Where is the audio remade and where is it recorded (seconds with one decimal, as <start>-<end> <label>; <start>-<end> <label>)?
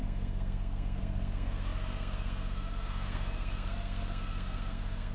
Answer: 0.0-5.1 remade